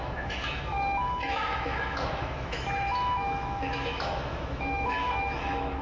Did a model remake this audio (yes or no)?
yes